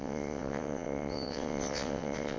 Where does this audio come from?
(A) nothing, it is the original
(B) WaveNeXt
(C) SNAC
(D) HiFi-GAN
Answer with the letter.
B